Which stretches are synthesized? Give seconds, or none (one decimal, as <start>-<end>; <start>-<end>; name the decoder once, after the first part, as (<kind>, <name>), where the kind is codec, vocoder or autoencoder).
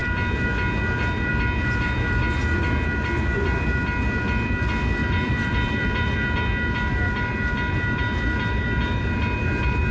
5.0-6.4 (vocoder, BigVGAN v2)